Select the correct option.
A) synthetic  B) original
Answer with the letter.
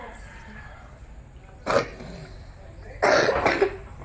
B